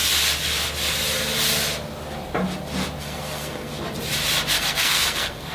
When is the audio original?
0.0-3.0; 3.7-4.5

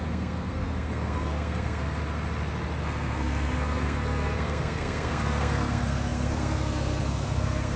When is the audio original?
2.0-2.8

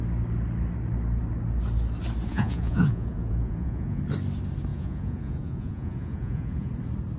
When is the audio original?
0.0-2.3; 4.0-4.7; 6.7-7.2